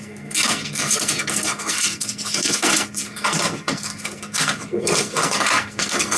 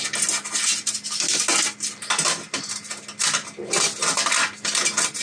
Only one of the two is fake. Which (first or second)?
first